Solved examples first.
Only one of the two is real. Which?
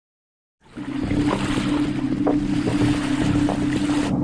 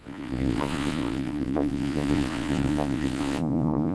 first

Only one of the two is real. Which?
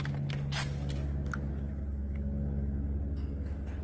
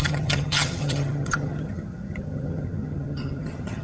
first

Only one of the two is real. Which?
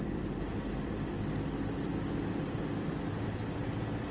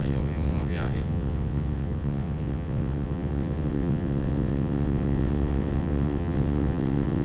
first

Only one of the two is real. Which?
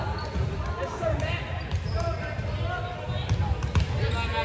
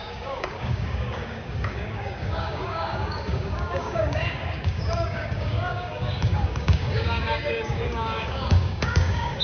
first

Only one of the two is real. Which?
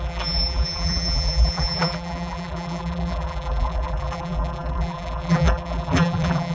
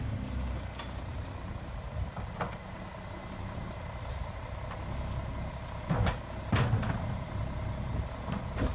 second